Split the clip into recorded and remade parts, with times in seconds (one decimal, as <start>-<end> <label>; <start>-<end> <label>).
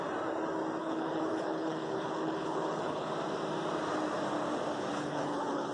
0.0-0.8 recorded; 0.8-3.1 remade; 3.1-4.9 recorded; 4.9-5.7 remade